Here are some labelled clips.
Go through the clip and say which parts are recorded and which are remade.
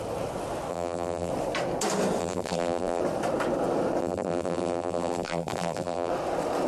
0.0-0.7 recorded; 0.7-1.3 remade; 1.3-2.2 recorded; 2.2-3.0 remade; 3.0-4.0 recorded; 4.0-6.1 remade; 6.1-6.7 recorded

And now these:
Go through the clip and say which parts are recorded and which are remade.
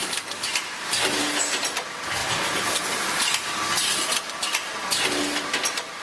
0.0-1.4 remade; 1.4-2.2 recorded; 2.2-2.8 remade; 2.8-6.0 recorded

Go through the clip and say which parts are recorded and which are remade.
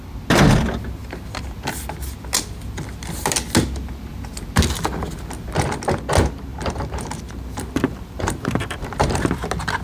0.0-6.5 recorded; 6.5-9.2 remade; 9.2-9.8 recorded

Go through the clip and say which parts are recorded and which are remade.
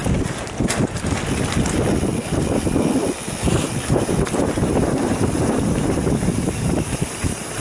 0.0-4.0 recorded; 4.0-7.6 remade